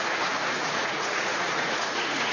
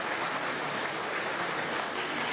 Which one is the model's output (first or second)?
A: first